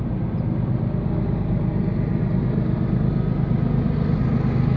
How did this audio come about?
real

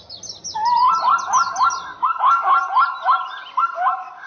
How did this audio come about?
real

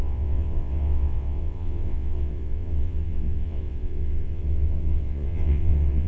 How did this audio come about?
fake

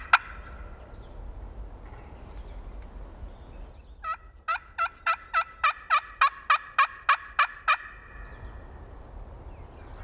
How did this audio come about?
real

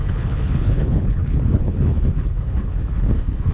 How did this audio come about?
fake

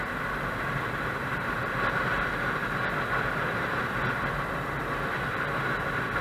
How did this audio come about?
real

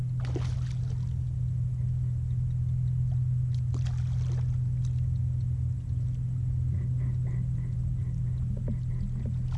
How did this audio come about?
real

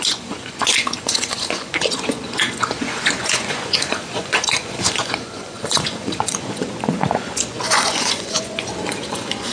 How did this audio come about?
fake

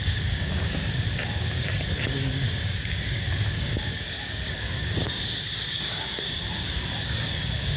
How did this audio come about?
fake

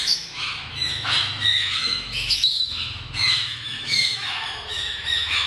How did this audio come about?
fake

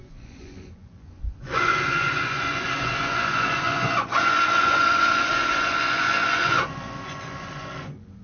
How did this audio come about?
fake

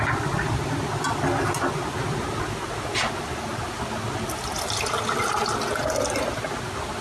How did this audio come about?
real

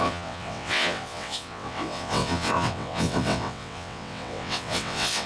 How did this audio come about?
fake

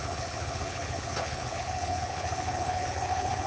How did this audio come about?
fake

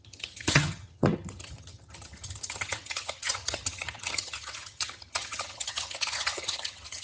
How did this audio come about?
fake